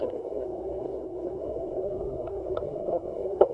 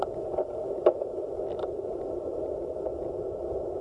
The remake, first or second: first